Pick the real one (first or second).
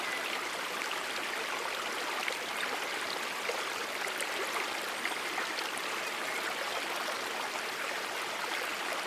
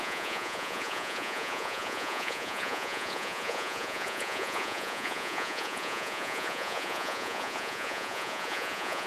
first